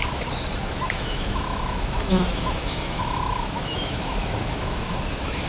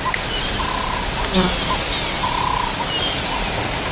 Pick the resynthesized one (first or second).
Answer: first